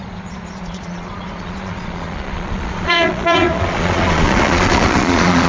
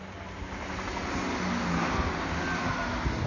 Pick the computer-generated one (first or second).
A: first